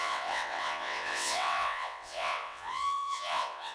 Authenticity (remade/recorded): remade